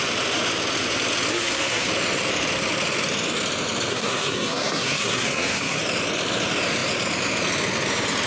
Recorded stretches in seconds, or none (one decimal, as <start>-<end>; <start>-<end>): 0.0-1.3; 1.9-3.9; 5.8-8.3